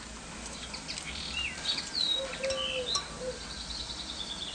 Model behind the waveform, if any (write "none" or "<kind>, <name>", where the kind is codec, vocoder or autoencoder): none